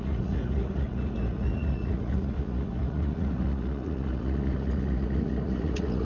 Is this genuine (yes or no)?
no